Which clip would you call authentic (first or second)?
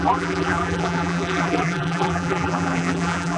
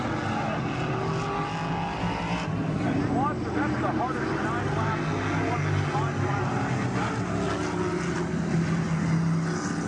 second